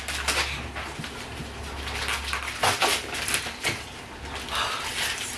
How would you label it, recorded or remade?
recorded